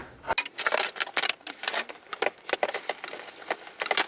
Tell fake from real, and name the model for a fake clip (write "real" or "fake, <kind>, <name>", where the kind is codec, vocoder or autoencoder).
real